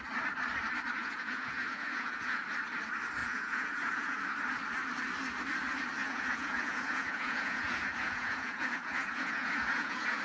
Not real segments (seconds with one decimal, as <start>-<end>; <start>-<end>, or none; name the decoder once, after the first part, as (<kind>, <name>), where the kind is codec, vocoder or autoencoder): 1.0-2.4 (vocoder, Vocos); 3.2-4.2; 6.0-10.2

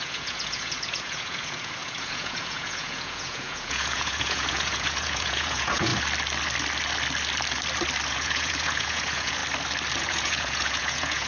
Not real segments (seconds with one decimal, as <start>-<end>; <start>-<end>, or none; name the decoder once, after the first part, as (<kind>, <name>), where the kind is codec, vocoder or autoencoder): 0.0-5.9 (vocoder, Vocos); 8.1-9.4; 10.0-11.3

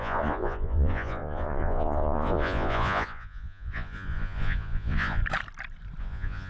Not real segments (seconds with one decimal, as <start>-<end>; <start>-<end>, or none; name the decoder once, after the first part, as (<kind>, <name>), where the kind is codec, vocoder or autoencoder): 0.0-5.2 (vocoder, Vocos); 6.0-6.5

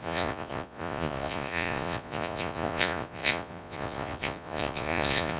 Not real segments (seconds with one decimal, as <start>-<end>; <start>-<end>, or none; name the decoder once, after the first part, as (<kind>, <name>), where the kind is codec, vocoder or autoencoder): 0.0-5.4 (vocoder, Vocos)

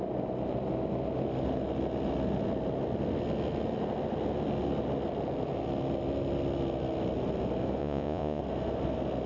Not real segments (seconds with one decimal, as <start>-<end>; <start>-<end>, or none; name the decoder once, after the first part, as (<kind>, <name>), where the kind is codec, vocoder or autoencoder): 7.8-8.4 (vocoder, Vocos)

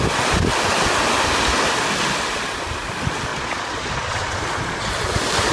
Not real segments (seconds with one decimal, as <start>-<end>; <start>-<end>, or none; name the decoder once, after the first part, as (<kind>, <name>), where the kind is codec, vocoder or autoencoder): 3.3-4.9 (vocoder, Vocos)